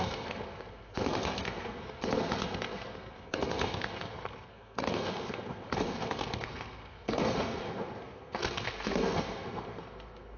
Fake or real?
fake